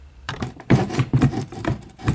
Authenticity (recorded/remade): remade